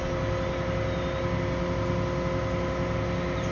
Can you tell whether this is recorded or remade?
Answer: recorded